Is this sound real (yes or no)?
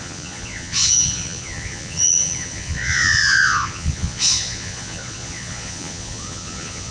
no